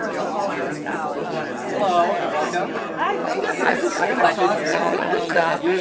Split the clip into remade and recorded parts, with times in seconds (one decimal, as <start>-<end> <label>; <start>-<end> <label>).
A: 0.0-3.2 recorded; 3.2-4.2 remade; 4.2-4.7 recorded; 4.7-5.8 remade